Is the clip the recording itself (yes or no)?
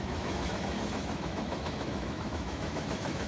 no